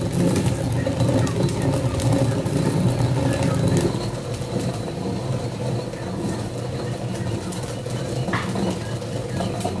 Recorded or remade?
recorded